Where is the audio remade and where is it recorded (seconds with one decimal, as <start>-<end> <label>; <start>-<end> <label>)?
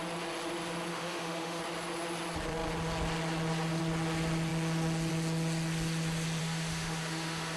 0.0-0.9 recorded; 0.9-1.6 remade; 1.6-6.4 recorded; 6.4-7.6 remade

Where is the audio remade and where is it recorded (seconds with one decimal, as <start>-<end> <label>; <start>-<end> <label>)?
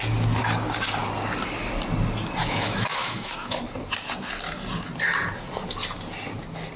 0.0-2.4 recorded; 2.4-3.6 remade; 3.6-6.8 recorded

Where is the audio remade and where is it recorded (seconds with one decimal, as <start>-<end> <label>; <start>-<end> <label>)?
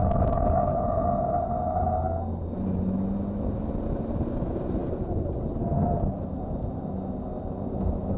0.0-8.2 recorded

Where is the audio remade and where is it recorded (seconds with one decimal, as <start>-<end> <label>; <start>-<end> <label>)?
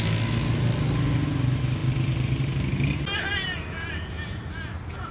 0.0-5.1 recorded